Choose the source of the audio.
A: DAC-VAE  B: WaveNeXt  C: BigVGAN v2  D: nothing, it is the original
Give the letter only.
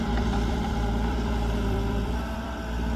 C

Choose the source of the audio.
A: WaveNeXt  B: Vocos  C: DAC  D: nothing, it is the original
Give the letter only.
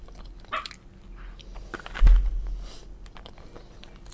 D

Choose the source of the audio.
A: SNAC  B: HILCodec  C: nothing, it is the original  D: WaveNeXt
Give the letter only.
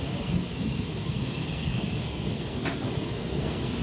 A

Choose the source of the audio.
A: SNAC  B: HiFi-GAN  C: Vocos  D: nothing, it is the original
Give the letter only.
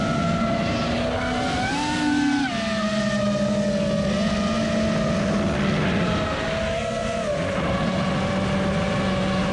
D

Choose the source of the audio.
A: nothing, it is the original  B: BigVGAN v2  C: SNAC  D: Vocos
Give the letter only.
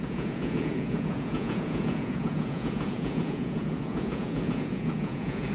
D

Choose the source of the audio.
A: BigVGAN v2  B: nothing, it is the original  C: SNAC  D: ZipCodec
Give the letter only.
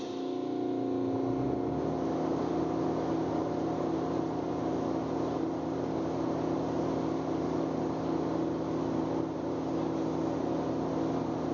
B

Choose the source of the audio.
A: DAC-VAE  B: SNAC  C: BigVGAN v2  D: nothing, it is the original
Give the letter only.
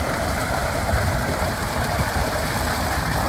C